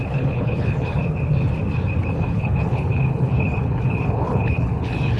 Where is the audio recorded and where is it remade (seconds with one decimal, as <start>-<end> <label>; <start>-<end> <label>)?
0.0-1.0 remade; 1.0-2.1 recorded; 2.1-5.2 remade